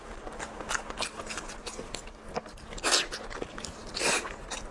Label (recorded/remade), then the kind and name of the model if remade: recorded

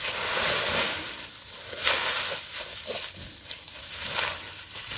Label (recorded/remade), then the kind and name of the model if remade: recorded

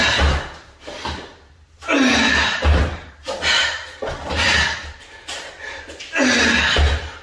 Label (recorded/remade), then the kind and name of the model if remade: recorded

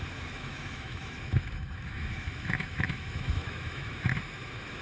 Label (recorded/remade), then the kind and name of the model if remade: remade, autoencoder, DAC-VAE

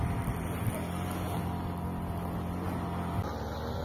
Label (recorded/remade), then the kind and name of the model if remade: recorded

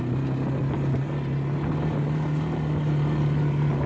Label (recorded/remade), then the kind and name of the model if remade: recorded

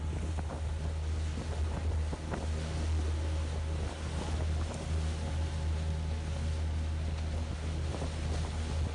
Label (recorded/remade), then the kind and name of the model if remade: recorded